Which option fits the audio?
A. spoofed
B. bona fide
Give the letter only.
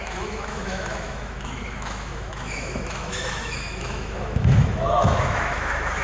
A